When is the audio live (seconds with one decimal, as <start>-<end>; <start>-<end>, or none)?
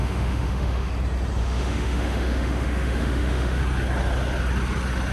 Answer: 0.9-1.4; 3.6-5.1